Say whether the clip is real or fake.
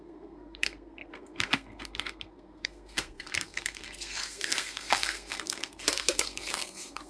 fake